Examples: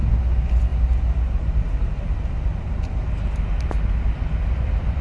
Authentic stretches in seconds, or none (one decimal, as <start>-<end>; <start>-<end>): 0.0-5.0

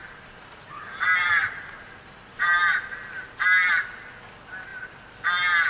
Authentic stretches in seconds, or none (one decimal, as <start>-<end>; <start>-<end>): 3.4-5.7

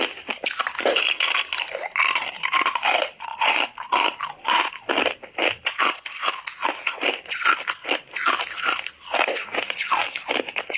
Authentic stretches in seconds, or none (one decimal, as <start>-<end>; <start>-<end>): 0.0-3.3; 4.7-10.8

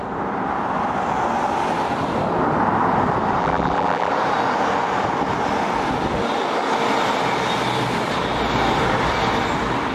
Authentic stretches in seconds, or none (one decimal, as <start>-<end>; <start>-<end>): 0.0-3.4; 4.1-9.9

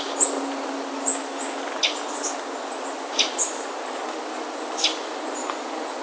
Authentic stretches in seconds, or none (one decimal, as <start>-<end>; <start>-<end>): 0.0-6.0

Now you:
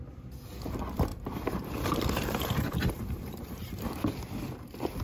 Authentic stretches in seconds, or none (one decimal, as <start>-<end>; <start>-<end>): 0.0-1.1; 4.1-5.0

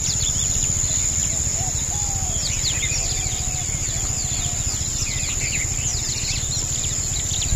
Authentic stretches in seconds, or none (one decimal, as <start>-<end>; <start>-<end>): 0.0-5.9; 6.4-7.6